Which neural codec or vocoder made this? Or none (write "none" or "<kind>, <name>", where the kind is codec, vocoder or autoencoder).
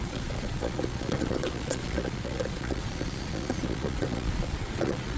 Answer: vocoder, Vocos